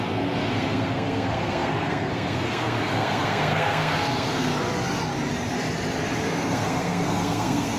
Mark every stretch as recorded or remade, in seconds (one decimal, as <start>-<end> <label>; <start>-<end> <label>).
0.0-4.5 remade; 4.5-6.2 recorded; 6.2-7.8 remade